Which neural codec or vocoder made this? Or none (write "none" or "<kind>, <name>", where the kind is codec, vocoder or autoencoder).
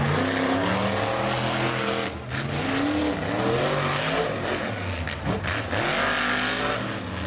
none